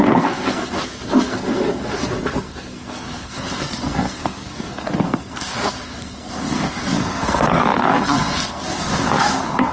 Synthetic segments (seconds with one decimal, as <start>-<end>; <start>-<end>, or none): 0.0-9.7

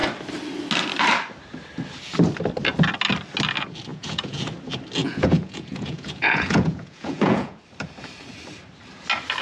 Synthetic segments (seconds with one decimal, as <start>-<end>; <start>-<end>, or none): 3.9-4.5; 5.0-7.6

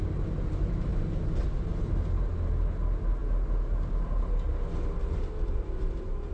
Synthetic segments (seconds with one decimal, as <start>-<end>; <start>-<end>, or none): none

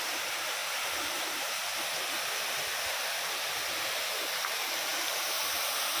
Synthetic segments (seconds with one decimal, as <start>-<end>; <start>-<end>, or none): 0.0-1.7; 3.9-6.0

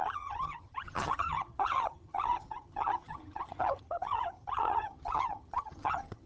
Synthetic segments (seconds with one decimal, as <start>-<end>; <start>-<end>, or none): 0.0-6.3

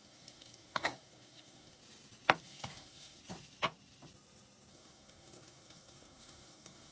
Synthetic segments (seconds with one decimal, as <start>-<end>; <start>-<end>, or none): 0.0-1.8; 2.4-3.2; 4.7-6.9

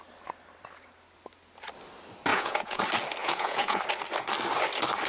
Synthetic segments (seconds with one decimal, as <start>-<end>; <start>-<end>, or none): 2.3-2.8; 3.2-3.8